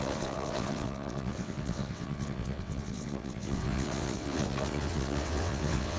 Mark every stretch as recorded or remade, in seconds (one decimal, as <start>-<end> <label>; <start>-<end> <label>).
0.0-6.0 remade